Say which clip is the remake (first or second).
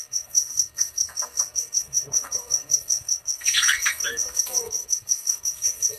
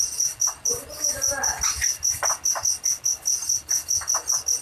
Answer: first